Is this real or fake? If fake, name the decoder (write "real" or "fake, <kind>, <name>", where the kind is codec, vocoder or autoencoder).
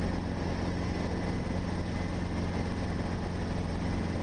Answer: real